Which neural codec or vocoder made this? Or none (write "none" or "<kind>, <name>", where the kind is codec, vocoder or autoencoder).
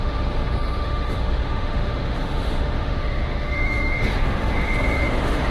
autoencoder, DAC-VAE